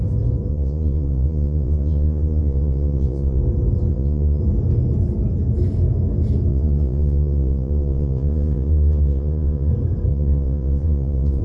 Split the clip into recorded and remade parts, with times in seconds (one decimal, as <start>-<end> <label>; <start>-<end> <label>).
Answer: 0.0-0.5 recorded; 0.5-3.4 remade; 3.4-3.9 recorded; 3.9-4.4 remade; 4.4-6.5 recorded; 6.5-9.7 remade; 9.7-10.1 recorded; 10.1-11.4 remade